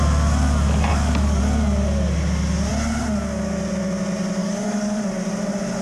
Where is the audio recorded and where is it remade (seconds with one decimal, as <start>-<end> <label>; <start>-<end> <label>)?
0.0-0.9 recorded; 0.9-1.4 remade; 1.4-4.4 recorded; 4.4-5.0 remade; 5.0-5.8 recorded